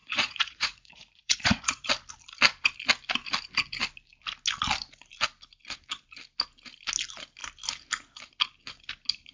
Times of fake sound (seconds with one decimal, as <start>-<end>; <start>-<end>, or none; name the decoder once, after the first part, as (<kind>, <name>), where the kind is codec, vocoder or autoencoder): 0.0-1.9 (vocoder, Vocos)